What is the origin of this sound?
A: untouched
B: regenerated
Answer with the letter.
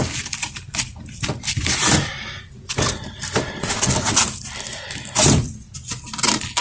A